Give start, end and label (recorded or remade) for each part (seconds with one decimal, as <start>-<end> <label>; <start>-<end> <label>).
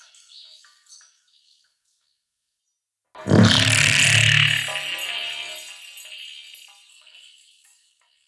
0.0-2.6 remade; 2.6-6.9 recorded; 6.9-8.3 remade